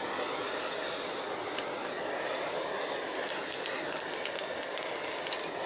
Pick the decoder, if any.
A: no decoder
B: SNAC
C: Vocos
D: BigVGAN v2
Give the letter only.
A